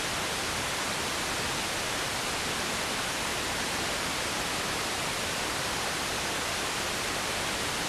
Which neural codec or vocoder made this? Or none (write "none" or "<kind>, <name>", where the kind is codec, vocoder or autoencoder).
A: vocoder, BigVGAN v2